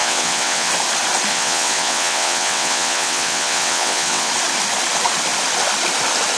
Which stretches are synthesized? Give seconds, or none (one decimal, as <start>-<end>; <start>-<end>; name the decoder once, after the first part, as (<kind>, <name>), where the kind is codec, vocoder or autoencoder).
0.0-0.7 (vocoder, WaveNeXt); 1.3-4.3